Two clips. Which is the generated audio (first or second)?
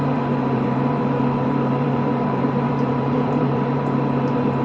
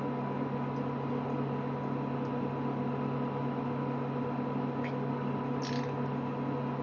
first